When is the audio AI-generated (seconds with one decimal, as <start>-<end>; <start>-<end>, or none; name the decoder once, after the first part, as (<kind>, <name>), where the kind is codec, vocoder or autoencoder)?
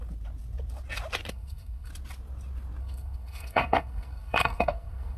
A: 1.3-1.9 (codec, SNAC); 2.8-5.2